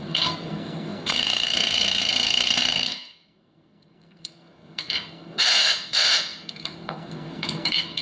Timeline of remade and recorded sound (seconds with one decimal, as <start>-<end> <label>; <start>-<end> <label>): 0.0-8.0 remade